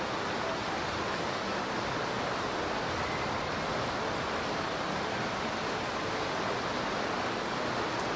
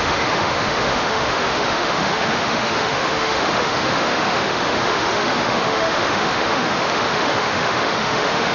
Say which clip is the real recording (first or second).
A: first